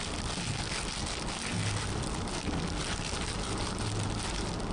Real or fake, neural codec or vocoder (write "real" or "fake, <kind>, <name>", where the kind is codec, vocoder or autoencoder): real